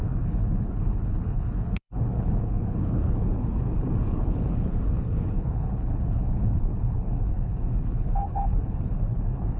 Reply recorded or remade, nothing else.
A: remade